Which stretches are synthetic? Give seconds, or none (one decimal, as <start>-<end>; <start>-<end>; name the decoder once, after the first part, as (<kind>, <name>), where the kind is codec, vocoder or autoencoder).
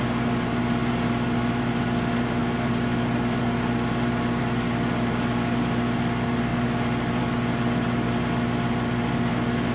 none